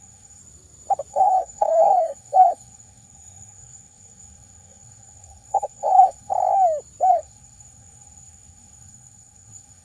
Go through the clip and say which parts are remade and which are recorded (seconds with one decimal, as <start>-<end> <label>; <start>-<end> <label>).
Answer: 0.0-0.4 remade; 0.4-1.1 recorded; 1.1-6.3 remade; 6.3-7.1 recorded; 7.1-9.8 remade